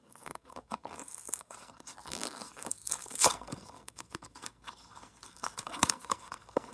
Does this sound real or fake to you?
fake